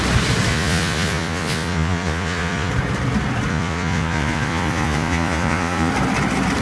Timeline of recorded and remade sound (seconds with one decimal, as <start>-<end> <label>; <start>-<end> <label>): 0.0-0.5 recorded; 0.5-2.7 remade; 2.7-3.5 recorded; 3.5-5.9 remade; 5.9-6.6 recorded